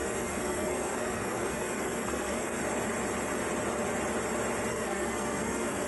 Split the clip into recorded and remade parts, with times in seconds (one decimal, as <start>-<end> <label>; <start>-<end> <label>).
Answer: 0.0-2.6 remade; 2.6-4.7 recorded; 4.7-5.9 remade